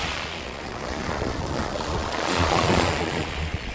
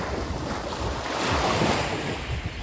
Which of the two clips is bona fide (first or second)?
second